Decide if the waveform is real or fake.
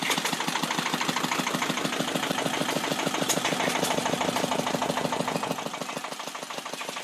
real